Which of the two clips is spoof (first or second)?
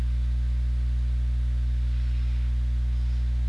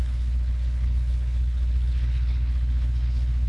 second